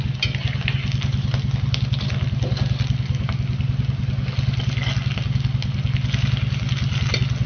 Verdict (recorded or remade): recorded